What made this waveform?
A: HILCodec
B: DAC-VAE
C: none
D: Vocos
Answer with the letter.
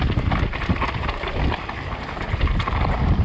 C